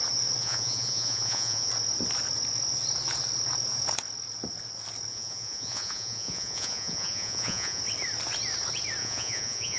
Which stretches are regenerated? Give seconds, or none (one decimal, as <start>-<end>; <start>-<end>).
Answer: 0.4-1.7; 5.1-7.8; 9.0-9.8